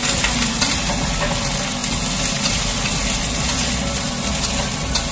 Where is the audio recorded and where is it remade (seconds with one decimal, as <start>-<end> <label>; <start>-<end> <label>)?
0.0-5.1 recorded